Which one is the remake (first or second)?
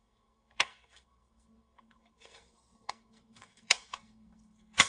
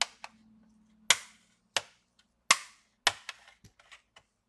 first